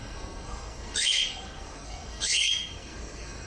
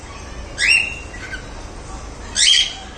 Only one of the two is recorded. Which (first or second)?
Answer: second